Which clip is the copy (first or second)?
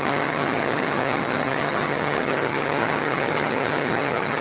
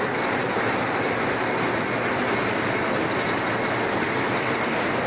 first